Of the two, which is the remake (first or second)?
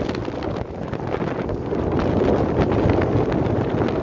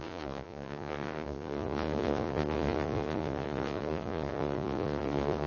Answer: second